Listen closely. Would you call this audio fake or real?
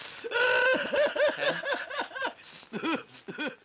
real